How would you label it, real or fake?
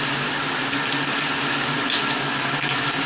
real